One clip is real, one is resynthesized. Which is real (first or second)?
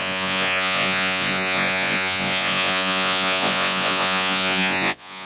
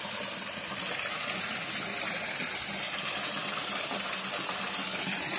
second